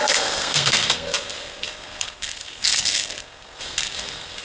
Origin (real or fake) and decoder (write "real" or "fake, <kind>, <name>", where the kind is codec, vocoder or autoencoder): fake, codec, SNAC